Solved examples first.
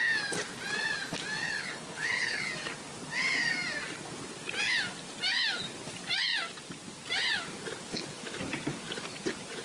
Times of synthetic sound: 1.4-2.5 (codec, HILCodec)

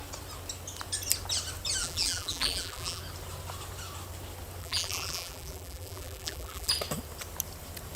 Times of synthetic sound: 1.8-3.0 (vocoder, BigVGAN v2); 4.6-6.7

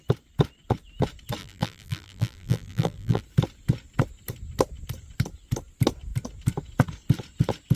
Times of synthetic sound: 1.4-3.2 (vocoder, BigVGAN v2)

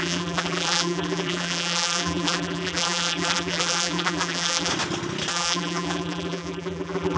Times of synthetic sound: 0.0-4.7 (vocoder, BigVGAN v2); 5.3-7.2

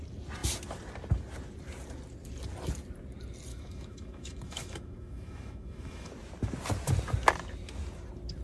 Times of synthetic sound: 3.5-6.1 (autoencoder, DAC-VAE)